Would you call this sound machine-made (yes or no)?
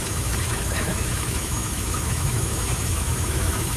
yes